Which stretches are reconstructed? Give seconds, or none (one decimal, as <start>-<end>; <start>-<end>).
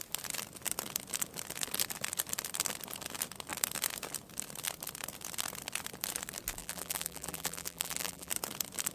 6.6-8.3